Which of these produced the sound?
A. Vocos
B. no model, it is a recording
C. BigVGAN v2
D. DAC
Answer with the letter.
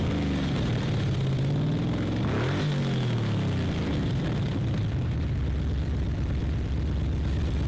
C